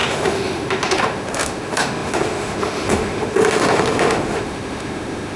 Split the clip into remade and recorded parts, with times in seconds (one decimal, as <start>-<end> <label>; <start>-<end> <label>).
0.0-5.4 remade